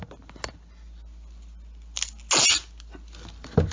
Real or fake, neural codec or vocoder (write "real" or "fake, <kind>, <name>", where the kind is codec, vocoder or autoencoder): real